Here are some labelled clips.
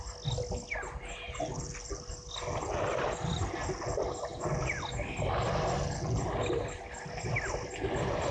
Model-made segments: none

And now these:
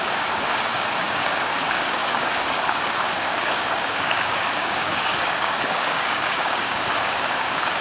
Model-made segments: 0.0-7.8 (codec, DAC)